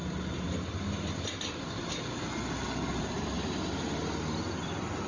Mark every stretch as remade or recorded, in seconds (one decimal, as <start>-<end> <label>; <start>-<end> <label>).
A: 0.0-5.1 recorded